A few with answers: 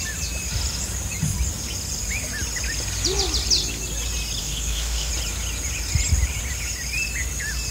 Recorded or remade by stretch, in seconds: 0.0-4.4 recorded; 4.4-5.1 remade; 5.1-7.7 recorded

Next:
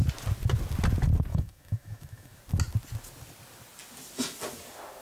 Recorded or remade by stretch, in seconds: 0.0-1.3 recorded; 1.3-2.4 remade; 2.4-5.0 recorded

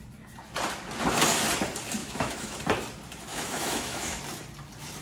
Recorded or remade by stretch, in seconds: 0.0-2.0 recorded; 2.0-2.6 remade; 2.6-3.3 recorded; 3.3-4.2 remade; 4.2-5.0 recorded